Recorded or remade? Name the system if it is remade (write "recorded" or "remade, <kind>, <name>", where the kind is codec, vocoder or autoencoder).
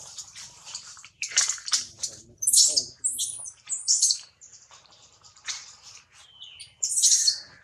remade, vocoder, BigVGAN v2